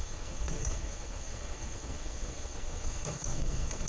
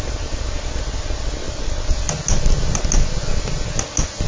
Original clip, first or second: second